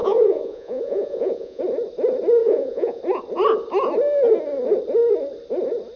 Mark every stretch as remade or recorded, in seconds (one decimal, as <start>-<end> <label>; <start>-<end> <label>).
0.0-1.6 remade; 1.6-2.4 recorded; 2.4-3.0 remade; 3.0-6.0 recorded

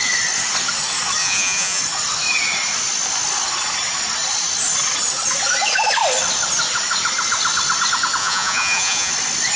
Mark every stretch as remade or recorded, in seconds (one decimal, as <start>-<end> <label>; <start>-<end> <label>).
0.0-1.2 recorded; 1.2-1.8 remade; 1.8-8.2 recorded; 8.2-9.1 remade; 9.1-9.6 recorded

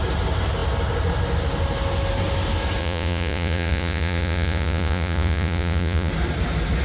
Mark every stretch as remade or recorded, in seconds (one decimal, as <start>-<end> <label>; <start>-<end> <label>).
0.0-2.8 recorded; 2.8-6.1 remade; 6.1-6.8 recorded

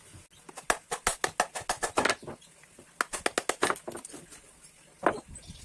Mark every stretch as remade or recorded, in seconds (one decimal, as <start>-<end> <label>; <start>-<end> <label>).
0.0-5.6 recorded

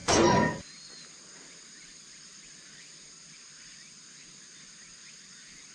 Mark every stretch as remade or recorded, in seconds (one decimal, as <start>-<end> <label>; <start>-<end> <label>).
0.0-0.6 remade; 0.6-5.7 recorded

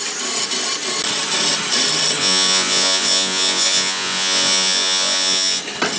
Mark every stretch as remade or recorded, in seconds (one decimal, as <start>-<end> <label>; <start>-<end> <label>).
0.0-2.2 recorded; 2.2-5.6 remade; 5.6-6.0 recorded

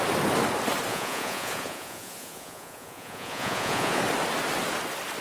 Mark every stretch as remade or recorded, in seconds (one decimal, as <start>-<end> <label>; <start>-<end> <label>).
0.0-0.9 recorded; 0.9-4.0 remade; 4.0-5.2 recorded